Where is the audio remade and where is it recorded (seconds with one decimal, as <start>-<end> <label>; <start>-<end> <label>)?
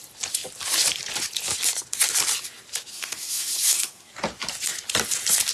0.0-2.9 recorded; 2.9-4.1 remade; 4.1-5.5 recorded